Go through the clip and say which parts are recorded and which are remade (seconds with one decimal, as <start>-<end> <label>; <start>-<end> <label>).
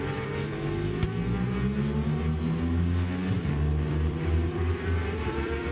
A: 0.0-0.5 remade; 0.5-3.9 recorded; 3.9-5.7 remade